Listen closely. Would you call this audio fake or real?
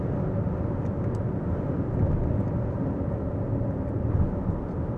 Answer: real